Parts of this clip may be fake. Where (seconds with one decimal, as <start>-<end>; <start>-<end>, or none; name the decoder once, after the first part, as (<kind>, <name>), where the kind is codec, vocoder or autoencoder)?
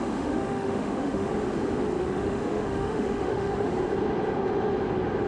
0.0-1.3 (autoencoder, DAC-VAE); 2.0-3.7